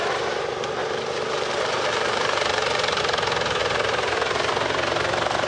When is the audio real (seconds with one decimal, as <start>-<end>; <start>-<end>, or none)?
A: 0.0-0.8; 3.0-3.6; 4.5-5.5